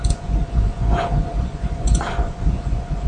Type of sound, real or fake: fake